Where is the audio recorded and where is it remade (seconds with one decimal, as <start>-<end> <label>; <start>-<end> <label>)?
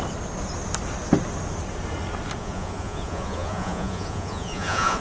0.0-2.4 recorded; 2.4-5.0 remade